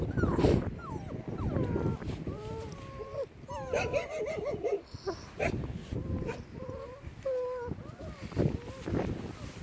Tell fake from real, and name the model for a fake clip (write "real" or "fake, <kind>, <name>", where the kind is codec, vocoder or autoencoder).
real